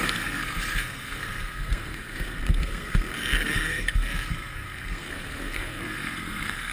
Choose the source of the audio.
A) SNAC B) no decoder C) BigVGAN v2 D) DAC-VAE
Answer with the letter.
A